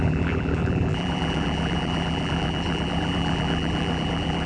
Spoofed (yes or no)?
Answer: yes